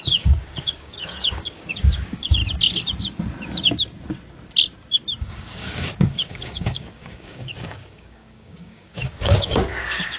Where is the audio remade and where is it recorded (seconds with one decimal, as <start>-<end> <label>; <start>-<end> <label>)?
0.0-2.4 remade; 2.4-5.2 recorded; 5.2-10.2 remade